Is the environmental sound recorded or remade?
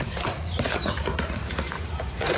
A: remade